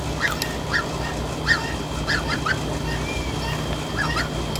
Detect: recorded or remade recorded